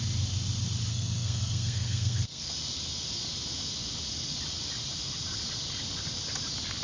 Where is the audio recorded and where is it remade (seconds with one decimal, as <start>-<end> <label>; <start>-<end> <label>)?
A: 0.0-0.9 recorded; 0.9-2.5 remade; 2.5-6.8 recorded

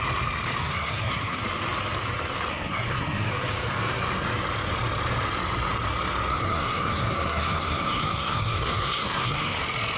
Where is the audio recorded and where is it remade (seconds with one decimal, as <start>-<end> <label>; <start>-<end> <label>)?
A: 0.0-0.6 recorded; 0.6-1.4 remade; 1.4-2.5 recorded; 2.5-3.3 remade; 3.3-6.3 recorded; 6.3-9.6 remade; 9.6-10.0 recorded

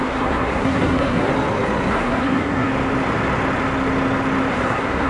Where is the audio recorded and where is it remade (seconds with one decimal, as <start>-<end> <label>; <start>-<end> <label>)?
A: 0.0-1.3 remade; 1.3-1.9 recorded; 1.9-2.7 remade; 2.7-4.5 recorded; 4.5-5.1 remade

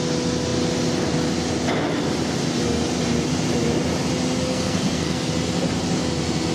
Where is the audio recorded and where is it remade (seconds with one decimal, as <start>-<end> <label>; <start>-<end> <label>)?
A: 0.0-4.5 recorded; 4.5-5.3 remade; 5.3-6.5 recorded

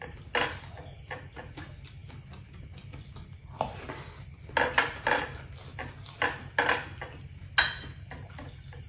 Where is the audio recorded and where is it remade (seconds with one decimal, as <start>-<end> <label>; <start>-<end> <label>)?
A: 0.0-8.9 recorded

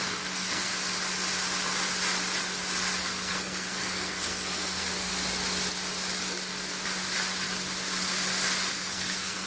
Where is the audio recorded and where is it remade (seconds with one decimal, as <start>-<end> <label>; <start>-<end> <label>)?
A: 0.0-0.7 remade; 0.7-3.0 recorded; 3.0-5.1 remade; 5.1-8.7 recorded; 8.7-9.5 remade

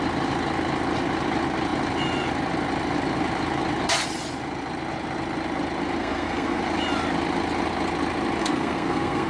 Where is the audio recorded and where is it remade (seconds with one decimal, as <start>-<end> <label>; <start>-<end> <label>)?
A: 0.0-6.0 recorded; 6.0-6.6 remade; 6.6-8.4 recorded; 8.4-9.3 remade